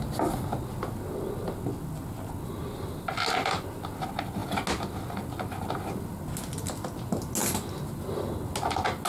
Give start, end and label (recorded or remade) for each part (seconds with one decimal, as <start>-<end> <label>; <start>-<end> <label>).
0.0-9.1 recorded